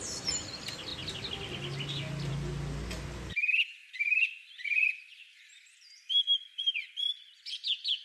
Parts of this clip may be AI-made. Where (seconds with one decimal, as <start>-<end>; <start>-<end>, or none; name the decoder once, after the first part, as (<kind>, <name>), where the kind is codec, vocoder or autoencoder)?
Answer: 3.8-6.7 (vocoder, BigVGAN v2)